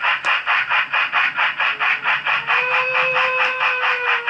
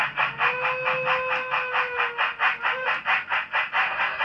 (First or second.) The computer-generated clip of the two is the first